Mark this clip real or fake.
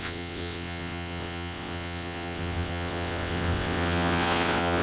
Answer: fake